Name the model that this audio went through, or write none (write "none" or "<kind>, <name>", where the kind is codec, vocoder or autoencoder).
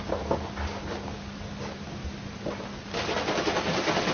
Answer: none